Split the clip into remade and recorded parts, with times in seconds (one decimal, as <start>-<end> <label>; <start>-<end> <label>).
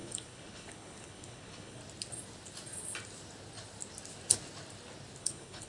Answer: 0.0-1.8 remade; 1.8-5.2 recorded; 5.2-5.7 remade